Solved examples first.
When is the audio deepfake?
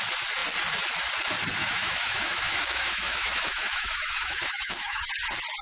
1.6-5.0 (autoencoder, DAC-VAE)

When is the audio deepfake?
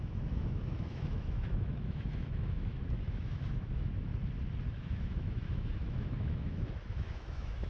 0.0-4.1 (autoencoder, DAC-VAE); 4.7-7.7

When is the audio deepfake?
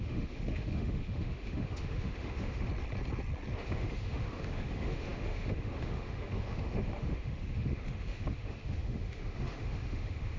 0.0-2.7 (autoencoder, DAC-VAE); 3.5-10.4